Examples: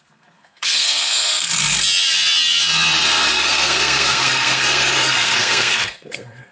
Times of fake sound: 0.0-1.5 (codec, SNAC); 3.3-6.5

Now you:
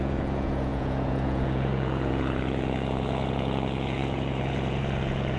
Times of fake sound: 0.0-5.4 (vocoder, Vocos)

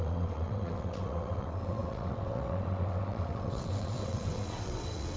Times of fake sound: 0.0-5.2 (vocoder, WaveNeXt)

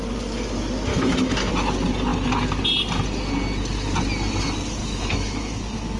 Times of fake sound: 0.9-1.5 (autoencoder, DAC-VAE); 4.8-6.0

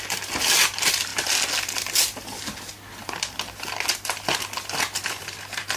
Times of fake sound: none

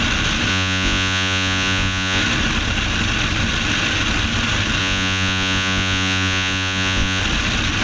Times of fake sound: 0.5-2.2 (vocoder, Vocos); 4.8-7.2

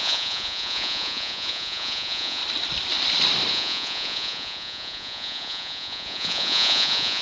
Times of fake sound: 0.0-2.4 (vocoder, Vocos); 3.5-7.2